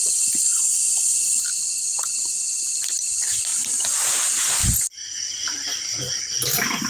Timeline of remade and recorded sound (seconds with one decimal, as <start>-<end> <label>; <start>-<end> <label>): 0.0-0.5 recorded; 0.5-1.3 remade; 1.3-1.9 recorded; 1.9-2.6 remade; 2.6-3.5 recorded; 3.5-4.1 remade; 4.1-4.6 recorded; 4.6-6.2 remade; 6.2-6.9 recorded